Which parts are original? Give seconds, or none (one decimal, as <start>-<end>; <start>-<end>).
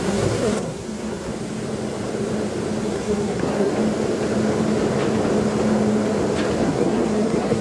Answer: 1.3-2.8; 3.7-6.6